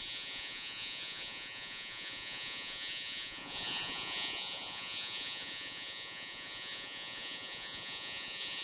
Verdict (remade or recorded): remade